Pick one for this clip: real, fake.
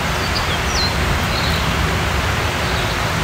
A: real